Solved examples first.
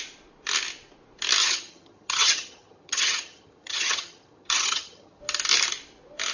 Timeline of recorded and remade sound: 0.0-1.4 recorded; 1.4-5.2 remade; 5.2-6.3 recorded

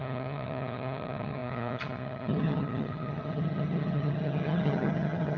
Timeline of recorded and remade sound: 0.0-5.4 remade